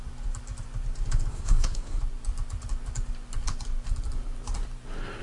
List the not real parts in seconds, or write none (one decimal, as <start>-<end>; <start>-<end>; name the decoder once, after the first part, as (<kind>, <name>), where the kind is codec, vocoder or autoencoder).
1.3-2.0 (codec, SNAC)